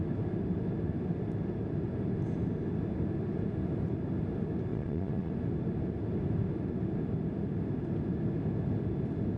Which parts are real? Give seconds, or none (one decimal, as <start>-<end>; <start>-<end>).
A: 0.0-4.7; 5.3-9.4